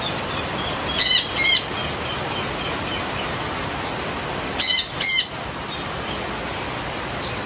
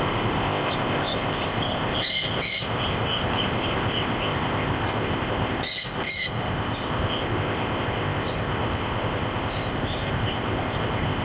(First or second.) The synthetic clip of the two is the second